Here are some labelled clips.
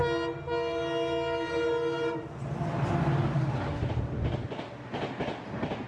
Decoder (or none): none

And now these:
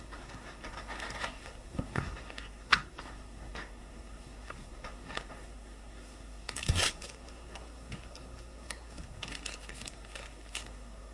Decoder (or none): codec, SNAC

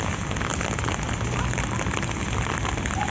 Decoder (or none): none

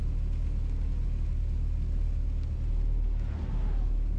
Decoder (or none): none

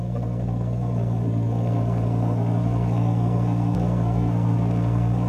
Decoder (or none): codec, SNAC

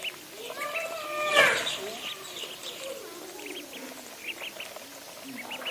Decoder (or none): none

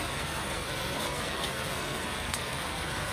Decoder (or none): codec, SNAC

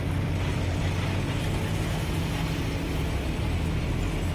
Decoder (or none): none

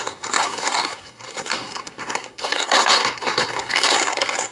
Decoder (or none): codec, SNAC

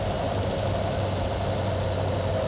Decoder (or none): none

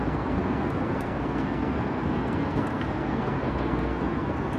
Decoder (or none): codec, SNAC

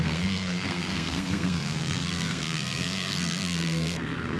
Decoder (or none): codec, SNAC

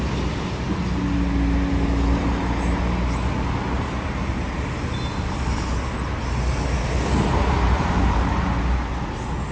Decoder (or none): none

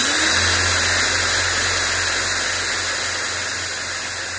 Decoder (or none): none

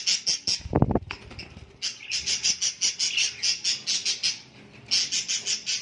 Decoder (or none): none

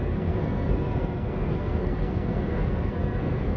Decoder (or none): codec, SNAC